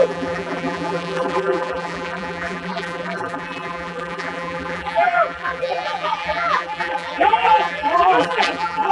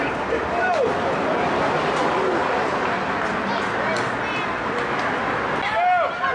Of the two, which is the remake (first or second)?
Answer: first